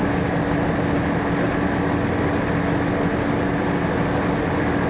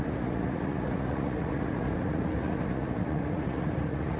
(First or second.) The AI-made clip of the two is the second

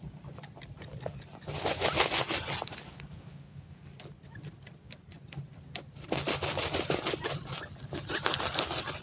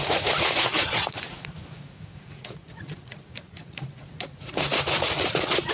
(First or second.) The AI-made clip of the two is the second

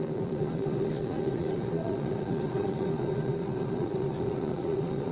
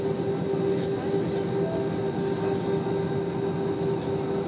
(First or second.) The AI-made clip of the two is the first